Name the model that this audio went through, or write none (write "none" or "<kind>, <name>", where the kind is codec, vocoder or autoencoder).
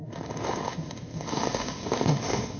autoencoder, DAC-VAE